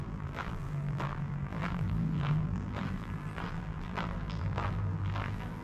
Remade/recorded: remade